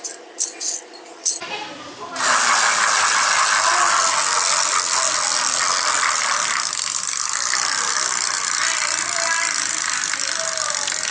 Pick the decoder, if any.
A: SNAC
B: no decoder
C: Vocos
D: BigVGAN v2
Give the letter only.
B